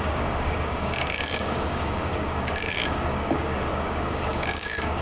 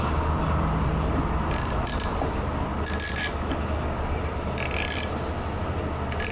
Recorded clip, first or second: second